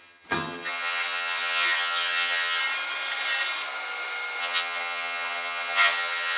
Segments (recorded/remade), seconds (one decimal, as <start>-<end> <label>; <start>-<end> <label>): 0.0-2.6 remade; 2.6-4.4 recorded; 4.4-6.4 remade